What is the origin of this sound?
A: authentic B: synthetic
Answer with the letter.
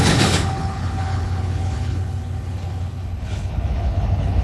B